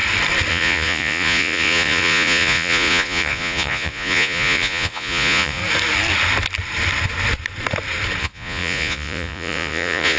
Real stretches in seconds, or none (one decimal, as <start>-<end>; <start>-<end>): 0.0-0.5; 5.6-8.2